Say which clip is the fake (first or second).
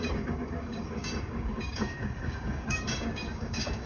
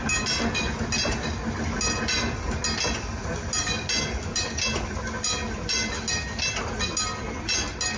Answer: first